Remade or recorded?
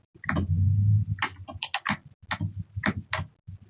recorded